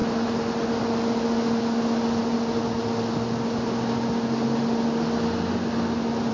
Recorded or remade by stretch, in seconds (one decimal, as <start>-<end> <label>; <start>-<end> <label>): 0.0-6.3 recorded